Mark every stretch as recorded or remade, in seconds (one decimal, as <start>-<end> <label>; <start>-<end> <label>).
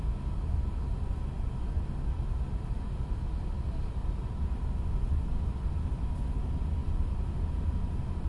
0.0-4.0 recorded; 4.0-5.2 remade; 5.2-6.8 recorded; 6.8-7.3 remade; 7.3-8.3 recorded